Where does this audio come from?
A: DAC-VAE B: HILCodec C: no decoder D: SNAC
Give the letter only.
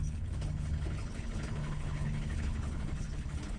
B